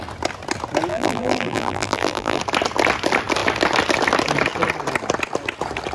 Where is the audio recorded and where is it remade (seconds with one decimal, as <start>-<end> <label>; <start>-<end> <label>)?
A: 0.0-0.9 recorded; 0.9-2.4 remade; 2.4-5.9 recorded